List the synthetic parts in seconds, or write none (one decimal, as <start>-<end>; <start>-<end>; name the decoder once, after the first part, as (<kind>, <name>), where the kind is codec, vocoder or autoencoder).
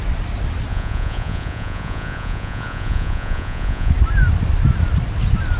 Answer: 0.7-3.9 (vocoder, Vocos)